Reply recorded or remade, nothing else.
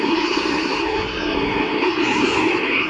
remade